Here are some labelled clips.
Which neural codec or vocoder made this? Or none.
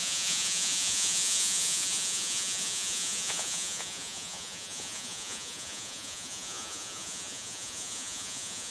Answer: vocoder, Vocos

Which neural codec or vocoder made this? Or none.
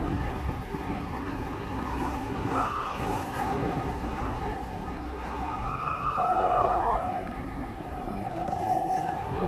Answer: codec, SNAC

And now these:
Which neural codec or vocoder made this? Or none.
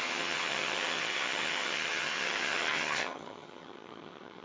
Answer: vocoder, HiFi-GAN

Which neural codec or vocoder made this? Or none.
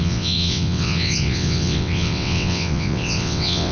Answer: vocoder, WaveNeXt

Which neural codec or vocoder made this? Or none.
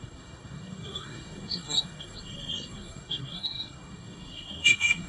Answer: codec, SNAC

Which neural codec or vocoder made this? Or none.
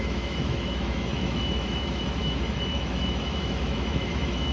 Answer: autoencoder, DAC-VAE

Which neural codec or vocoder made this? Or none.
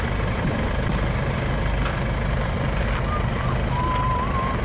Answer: none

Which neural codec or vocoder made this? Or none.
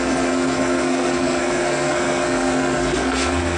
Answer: codec, SNAC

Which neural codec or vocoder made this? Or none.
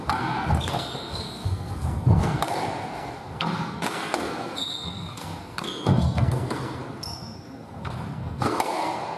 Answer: codec, SNAC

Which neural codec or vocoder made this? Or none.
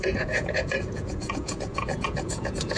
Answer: vocoder, Vocos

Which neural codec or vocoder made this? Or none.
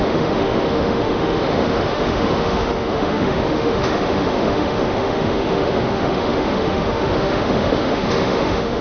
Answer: autoencoder, DAC-VAE